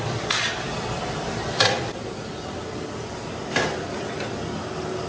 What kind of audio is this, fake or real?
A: fake